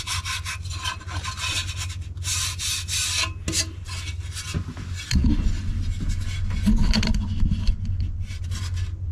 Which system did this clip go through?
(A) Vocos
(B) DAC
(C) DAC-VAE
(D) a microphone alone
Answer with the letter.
D